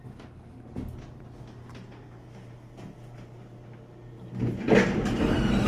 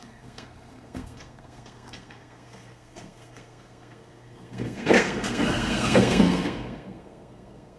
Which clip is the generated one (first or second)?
second